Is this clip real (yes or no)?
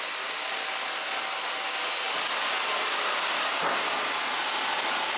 yes